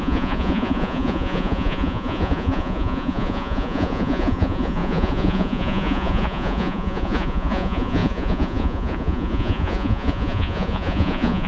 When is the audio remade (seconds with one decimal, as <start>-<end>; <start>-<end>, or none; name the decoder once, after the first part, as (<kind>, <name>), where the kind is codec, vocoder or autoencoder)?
0.0-11.5 (vocoder, Vocos)

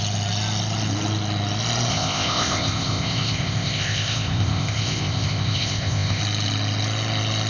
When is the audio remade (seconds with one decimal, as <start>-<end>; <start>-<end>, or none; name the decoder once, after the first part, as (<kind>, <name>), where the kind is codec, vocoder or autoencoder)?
1.9-6.2 (codec, ZipCodec)